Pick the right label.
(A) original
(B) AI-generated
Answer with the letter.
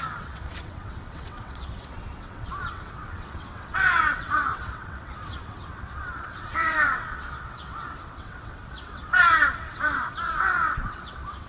B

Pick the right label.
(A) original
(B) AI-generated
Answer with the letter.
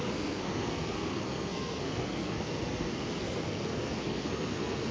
B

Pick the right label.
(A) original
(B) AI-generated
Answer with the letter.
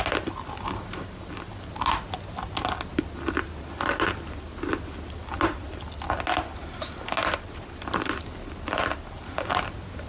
A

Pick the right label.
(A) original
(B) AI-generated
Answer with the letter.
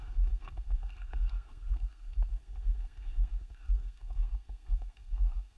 B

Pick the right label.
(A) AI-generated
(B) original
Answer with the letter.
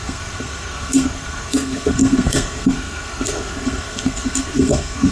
A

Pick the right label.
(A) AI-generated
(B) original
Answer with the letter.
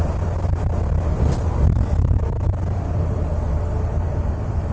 B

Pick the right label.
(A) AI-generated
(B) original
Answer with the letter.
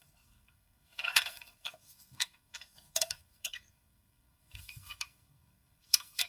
A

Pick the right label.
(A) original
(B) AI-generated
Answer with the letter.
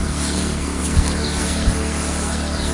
B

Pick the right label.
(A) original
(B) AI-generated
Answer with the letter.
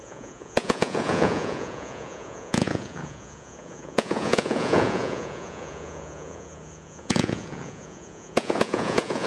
B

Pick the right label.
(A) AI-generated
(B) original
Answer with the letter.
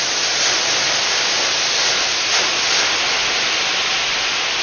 B